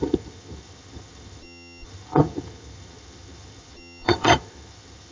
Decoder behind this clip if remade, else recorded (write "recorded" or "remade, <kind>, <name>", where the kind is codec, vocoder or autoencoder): remade, vocoder, HiFi-GAN